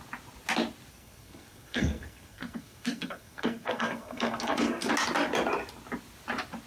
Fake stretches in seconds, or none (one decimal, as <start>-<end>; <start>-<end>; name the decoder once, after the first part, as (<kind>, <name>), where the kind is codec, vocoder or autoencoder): 0.9-4.9 (codec, SNAC)